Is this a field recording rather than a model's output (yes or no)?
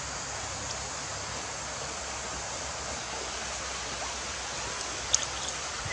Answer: yes